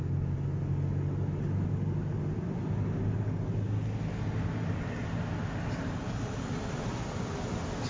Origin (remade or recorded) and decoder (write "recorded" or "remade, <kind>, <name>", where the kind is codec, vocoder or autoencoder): recorded